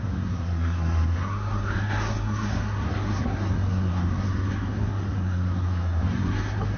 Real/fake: fake